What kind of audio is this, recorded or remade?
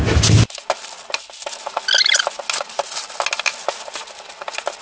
recorded